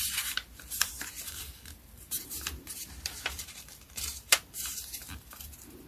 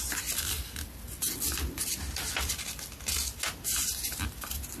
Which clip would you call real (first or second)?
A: second